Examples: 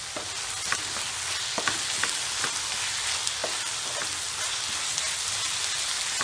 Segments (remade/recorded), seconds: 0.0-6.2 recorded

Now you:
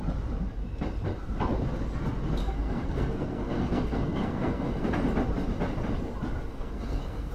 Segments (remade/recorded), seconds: 0.0-2.4 recorded; 2.4-4.9 remade; 4.9-6.5 recorded; 6.5-7.3 remade

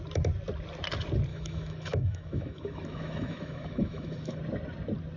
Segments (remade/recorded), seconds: 0.0-1.3 recorded; 1.3-4.4 remade; 4.4-5.2 recorded

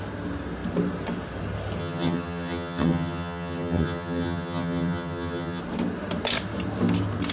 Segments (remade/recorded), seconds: 0.0-1.8 recorded; 1.8-5.6 remade; 5.6-7.3 recorded

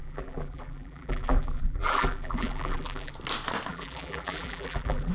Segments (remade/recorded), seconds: 0.0-3.1 remade; 3.1-3.7 recorded; 3.7-5.1 remade

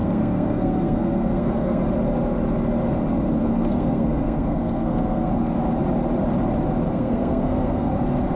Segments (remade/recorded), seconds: 0.0-1.8 remade; 1.8-3.4 recorded; 3.4-5.3 remade; 5.3-6.9 recorded; 6.9-7.9 remade; 7.9-8.4 recorded

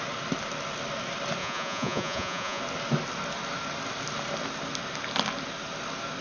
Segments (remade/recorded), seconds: 0.0-1.4 recorded; 1.4-2.6 remade; 2.6-6.2 recorded